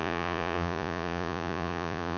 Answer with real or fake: fake